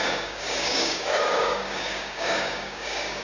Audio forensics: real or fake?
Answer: fake